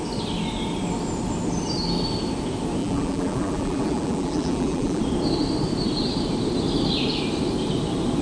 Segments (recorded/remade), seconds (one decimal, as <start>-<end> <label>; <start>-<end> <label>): 0.0-2.8 recorded; 2.8-5.0 remade; 5.0-8.2 recorded